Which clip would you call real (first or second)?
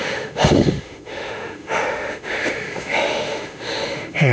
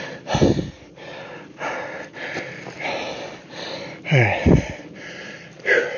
second